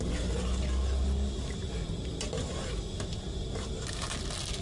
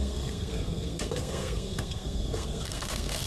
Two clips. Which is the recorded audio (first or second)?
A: first